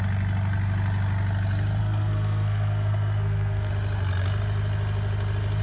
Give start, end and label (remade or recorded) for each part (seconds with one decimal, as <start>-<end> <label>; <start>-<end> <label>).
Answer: 0.0-1.8 recorded; 1.8-3.7 remade; 3.7-5.6 recorded